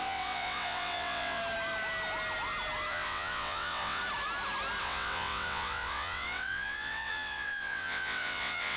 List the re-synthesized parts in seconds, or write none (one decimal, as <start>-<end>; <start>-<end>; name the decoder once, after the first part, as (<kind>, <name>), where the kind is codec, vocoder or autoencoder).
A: 0.0-1.4 (vocoder, WaveNeXt); 2.9-4.0; 4.8-8.8